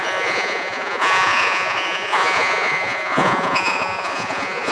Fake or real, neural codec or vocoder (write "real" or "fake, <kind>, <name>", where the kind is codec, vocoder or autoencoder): fake, vocoder, Vocos